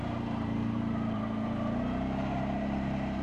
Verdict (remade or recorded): remade